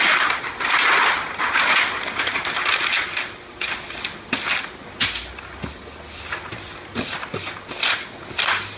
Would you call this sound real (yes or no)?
yes